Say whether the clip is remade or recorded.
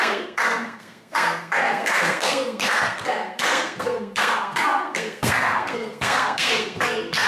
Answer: remade